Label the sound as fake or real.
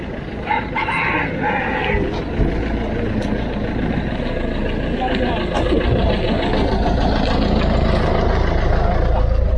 real